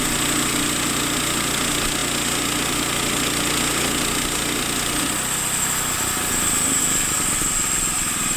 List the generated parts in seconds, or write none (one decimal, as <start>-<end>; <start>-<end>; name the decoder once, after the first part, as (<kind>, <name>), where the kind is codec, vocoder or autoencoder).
none